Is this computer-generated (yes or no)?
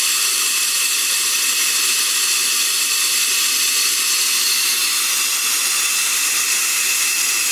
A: yes